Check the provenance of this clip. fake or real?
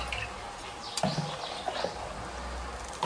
real